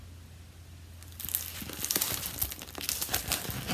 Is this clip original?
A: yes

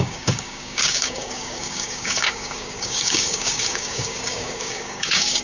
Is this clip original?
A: no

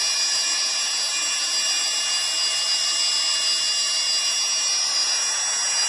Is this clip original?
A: yes